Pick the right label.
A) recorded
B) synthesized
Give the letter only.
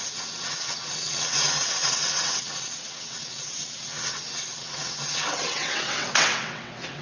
B